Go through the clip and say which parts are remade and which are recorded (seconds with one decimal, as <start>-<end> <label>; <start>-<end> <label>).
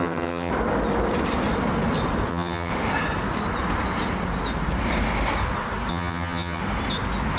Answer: 0.0-0.5 remade; 0.5-2.3 recorded; 2.3-2.7 remade; 2.7-5.9 recorded; 5.9-6.6 remade; 6.6-7.4 recorded